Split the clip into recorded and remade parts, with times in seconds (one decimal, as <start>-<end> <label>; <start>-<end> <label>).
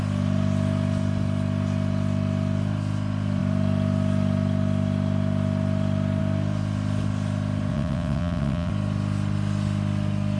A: 0.0-7.7 recorded; 7.7-8.7 remade; 8.7-10.4 recorded